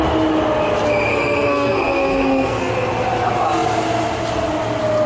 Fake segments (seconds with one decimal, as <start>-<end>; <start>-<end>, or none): 1.1-2.7